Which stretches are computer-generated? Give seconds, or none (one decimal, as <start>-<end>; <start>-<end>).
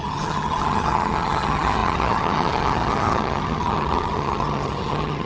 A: 0.0-5.3